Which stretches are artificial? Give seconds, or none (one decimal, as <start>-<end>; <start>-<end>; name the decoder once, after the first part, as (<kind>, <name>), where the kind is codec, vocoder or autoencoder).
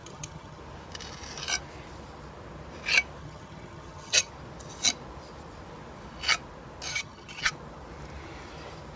0.0-0.6 (vocoder, HiFi-GAN); 3.2-4.3; 6.9-7.5